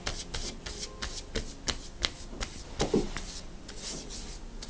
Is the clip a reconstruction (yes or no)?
no